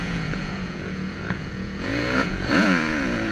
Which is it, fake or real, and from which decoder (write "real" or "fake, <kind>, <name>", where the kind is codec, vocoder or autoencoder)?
fake, vocoder, Vocos